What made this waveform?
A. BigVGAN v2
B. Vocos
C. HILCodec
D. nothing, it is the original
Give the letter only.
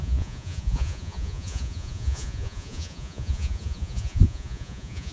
B